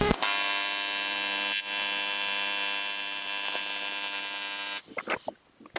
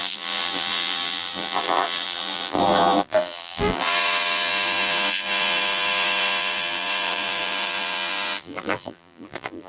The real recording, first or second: first